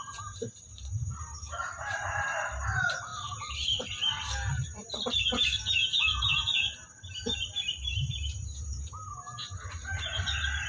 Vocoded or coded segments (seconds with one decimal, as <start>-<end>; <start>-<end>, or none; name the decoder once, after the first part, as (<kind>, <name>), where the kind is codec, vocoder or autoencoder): 0.0-3.1 (vocoder, BigVGAN v2); 4.2-10.7